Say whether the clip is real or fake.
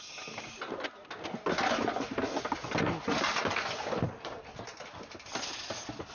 real